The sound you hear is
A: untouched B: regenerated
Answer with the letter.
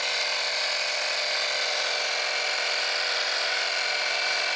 A